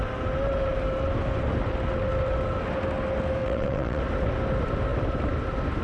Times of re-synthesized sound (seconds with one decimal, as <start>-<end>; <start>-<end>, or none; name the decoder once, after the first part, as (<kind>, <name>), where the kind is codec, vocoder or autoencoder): 3.4-4.0 (vocoder, WaveNeXt)

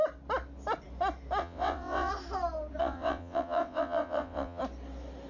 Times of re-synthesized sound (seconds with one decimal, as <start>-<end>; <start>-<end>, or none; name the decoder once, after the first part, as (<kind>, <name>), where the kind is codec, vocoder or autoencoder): 1.4-2.1 (vocoder, WaveNeXt); 2.8-4.6